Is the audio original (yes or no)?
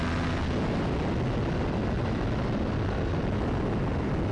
yes